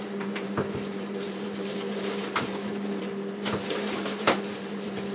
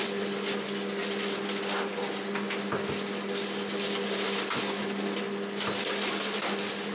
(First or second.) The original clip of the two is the second